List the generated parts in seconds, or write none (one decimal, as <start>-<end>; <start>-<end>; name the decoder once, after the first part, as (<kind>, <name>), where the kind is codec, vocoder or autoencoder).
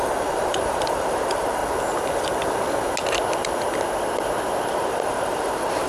0.0-1.6 (vocoder, BigVGAN v2); 4.7-5.9